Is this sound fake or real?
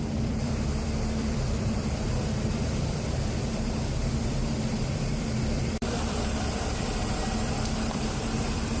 fake